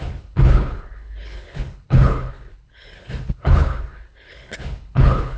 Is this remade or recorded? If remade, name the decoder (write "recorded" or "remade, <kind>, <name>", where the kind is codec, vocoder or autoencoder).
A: remade, codec, HILCodec